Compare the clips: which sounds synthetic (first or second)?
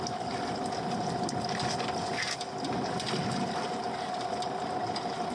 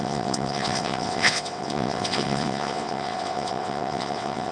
second